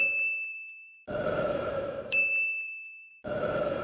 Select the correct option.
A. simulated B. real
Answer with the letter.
A